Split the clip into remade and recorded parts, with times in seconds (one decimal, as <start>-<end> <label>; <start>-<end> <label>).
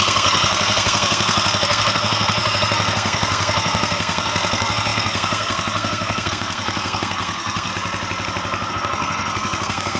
0.0-7.7 remade; 7.7-8.7 recorded; 8.7-10.0 remade